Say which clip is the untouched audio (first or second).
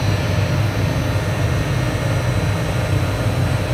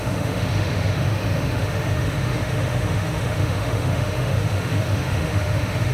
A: first